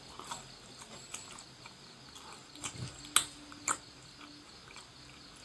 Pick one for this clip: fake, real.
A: real